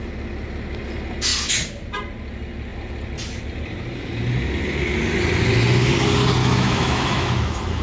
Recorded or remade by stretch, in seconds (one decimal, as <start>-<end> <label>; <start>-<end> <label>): 0.0-6.4 recorded; 6.4-7.8 remade